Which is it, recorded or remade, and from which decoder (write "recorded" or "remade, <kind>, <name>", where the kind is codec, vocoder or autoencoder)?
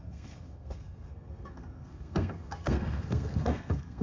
remade, codec, SNAC